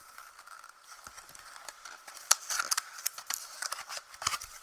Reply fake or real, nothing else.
fake